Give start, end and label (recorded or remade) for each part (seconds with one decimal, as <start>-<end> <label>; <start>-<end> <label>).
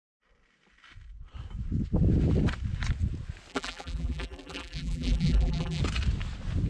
0.0-3.5 recorded; 3.5-5.8 remade; 5.8-6.7 recorded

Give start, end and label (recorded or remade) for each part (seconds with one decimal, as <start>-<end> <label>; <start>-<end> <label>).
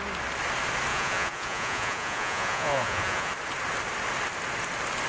0.0-0.9 recorded; 0.9-3.3 remade; 3.3-5.1 recorded